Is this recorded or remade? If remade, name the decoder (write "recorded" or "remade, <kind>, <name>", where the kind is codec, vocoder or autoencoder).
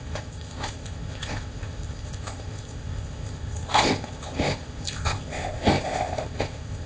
remade, codec, ZipCodec